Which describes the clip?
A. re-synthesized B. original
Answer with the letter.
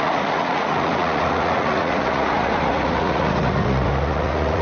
A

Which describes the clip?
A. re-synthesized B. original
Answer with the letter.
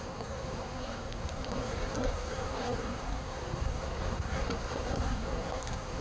A